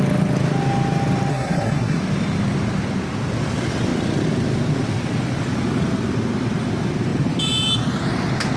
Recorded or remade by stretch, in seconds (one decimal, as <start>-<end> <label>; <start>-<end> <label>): 0.0-1.3 recorded; 1.3-2.0 remade; 2.0-8.6 recorded